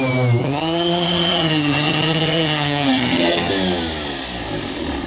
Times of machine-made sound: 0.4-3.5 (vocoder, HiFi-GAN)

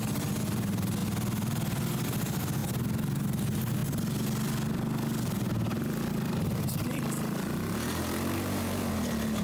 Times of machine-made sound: 2.6-3.4 (vocoder, BigVGAN v2); 3.8-8.9

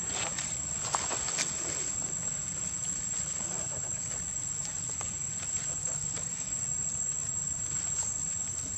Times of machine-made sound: 5.8-6.5 (codec, DAC)